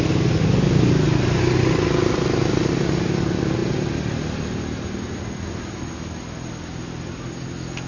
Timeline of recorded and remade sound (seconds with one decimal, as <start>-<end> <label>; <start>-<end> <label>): 0.0-7.9 recorded